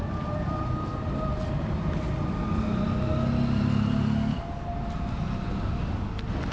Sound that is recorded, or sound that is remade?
recorded